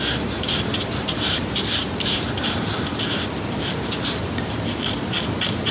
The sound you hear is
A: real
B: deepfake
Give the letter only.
B